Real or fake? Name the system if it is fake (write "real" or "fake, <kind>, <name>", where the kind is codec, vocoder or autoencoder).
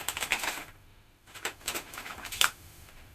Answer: fake, autoencoder, DAC-VAE